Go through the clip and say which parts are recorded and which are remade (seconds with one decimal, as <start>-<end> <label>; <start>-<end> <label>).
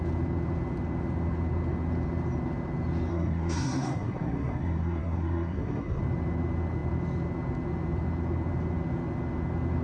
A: 0.0-3.1 recorded; 3.1-6.0 remade; 6.0-9.8 recorded